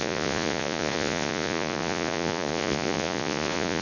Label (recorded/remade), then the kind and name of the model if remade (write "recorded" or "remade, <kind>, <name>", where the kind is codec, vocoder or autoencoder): remade, vocoder, Vocos